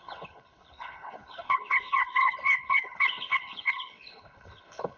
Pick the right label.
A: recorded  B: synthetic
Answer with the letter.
B